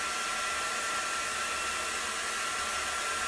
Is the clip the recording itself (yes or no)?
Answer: yes